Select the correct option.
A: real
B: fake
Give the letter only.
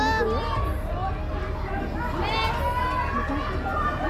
A